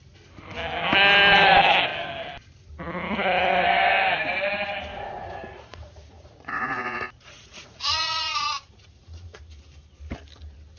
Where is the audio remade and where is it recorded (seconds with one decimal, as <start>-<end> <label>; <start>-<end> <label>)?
0.0-4.9 recorded; 4.9-9.4 remade; 9.4-10.8 recorded